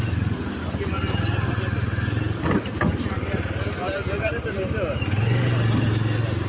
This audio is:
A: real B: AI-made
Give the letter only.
A